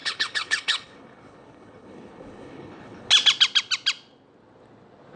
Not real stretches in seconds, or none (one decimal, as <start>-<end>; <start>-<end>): 0.0-3.1